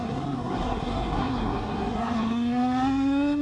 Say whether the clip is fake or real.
fake